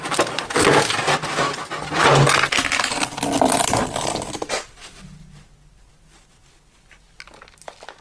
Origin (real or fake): real